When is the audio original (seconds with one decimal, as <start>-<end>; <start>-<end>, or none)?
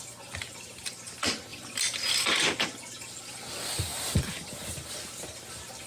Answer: 0.0-1.5; 2.4-3.9; 4.6-5.9